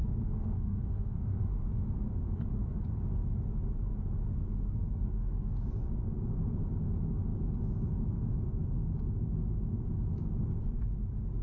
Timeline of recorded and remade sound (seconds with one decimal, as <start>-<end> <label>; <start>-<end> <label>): 0.0-1.8 remade; 1.8-4.3 recorded; 4.3-5.7 remade; 5.7-11.4 recorded